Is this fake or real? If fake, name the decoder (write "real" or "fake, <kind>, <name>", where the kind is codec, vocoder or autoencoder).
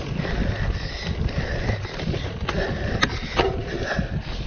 real